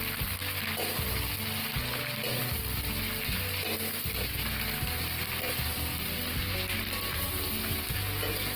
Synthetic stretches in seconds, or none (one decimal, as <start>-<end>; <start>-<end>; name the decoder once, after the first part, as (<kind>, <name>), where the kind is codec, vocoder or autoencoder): none